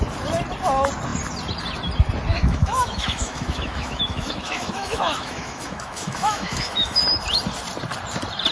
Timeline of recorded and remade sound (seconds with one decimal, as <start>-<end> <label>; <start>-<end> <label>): 0.0-2.3 recorded; 2.3-7.0 remade; 7.0-8.5 recorded